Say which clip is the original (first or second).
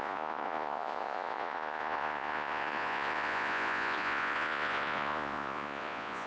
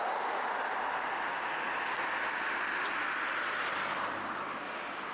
second